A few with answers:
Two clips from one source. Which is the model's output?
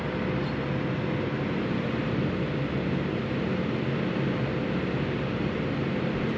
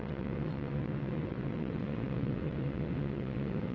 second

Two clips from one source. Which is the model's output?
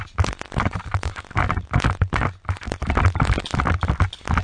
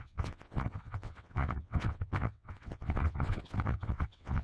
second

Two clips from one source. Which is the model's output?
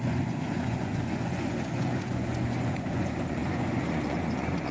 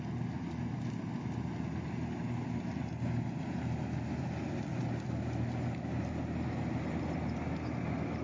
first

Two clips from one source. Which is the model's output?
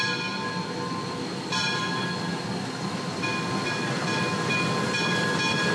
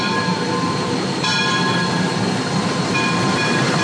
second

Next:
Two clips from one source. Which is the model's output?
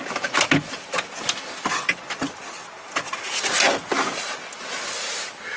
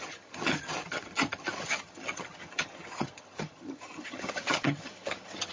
second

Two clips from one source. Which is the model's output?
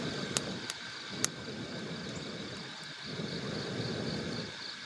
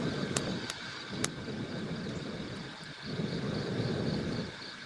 second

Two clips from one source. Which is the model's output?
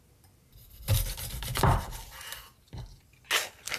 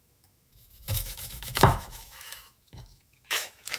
second